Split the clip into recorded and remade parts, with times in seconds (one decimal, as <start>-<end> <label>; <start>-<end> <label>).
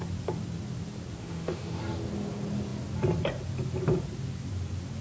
0.0-1.2 recorded; 1.2-1.8 remade; 1.8-5.0 recorded